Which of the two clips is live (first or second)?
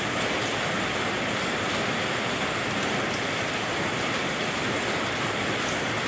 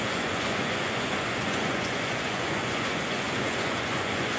first